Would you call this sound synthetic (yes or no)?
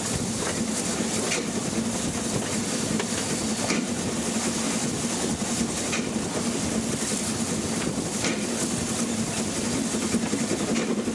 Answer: no